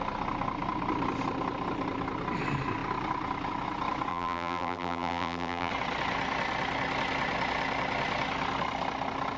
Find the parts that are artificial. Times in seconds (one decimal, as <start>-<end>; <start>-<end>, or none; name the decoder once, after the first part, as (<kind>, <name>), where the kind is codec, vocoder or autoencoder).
4.1-5.7 (vocoder, BigVGAN v2)